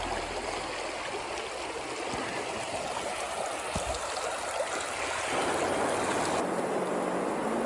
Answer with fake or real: real